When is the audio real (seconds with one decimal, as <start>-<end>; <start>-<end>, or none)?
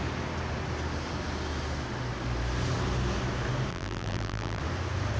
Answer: 0.0-3.7; 4.6-5.2